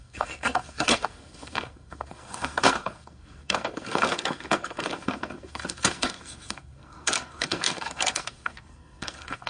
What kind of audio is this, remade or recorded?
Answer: remade